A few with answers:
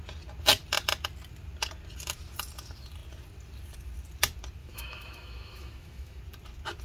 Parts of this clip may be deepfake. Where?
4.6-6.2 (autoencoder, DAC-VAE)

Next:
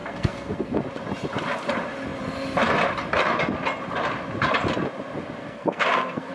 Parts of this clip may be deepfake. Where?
0.0-0.8 (codec, SNAC); 5.4-6.3

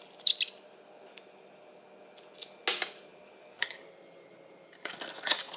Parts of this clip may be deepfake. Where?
3.1-3.9 (codec, DAC)

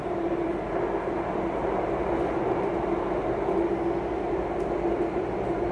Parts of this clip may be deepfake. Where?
0.0-0.7 (vocoder, BigVGAN v2)

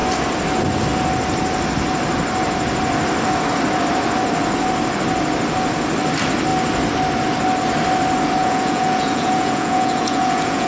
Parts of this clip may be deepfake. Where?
8.4-10.7 (vocoder, Vocos)